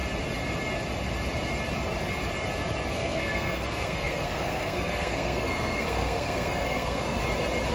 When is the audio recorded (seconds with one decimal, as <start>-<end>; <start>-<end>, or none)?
0.0-2.9; 7.2-7.7